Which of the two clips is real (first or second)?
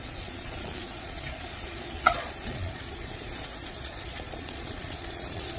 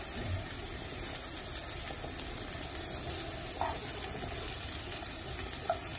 second